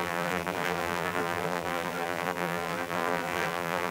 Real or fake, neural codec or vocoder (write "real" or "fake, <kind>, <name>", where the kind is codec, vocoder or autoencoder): fake, vocoder, BigVGAN v2